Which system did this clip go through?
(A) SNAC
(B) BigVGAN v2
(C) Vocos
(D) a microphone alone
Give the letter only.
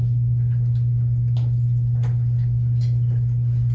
D